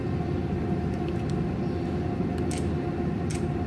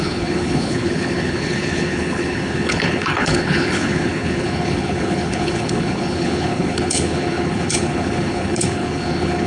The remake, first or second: second